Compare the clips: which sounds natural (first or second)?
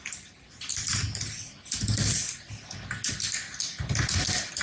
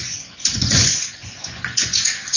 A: first